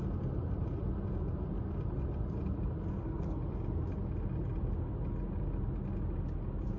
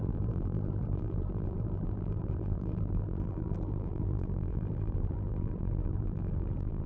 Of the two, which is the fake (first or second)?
second